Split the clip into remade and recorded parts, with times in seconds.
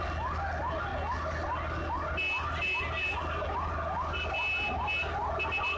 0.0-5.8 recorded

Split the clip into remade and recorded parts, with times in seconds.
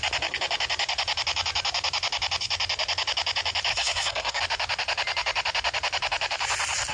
0.0-3.7 recorded; 3.7-4.4 remade; 4.4-6.9 recorded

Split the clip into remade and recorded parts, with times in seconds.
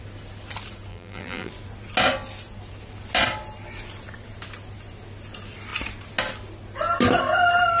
0.0-0.9 recorded; 0.9-1.5 remade; 1.5-7.8 recorded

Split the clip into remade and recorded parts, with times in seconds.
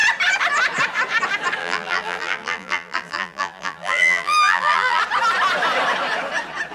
0.0-1.6 recorded; 1.6-5.0 remade; 5.0-6.7 recorded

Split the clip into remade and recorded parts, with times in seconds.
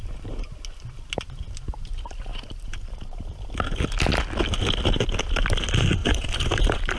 0.0-2.3 recorded; 2.3-3.4 remade; 3.4-6.0 recorded; 6.0-6.6 remade; 6.6-7.0 recorded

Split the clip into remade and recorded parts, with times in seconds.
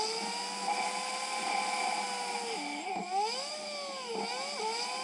0.0-5.0 recorded